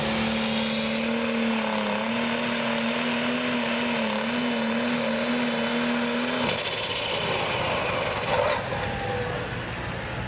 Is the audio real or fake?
real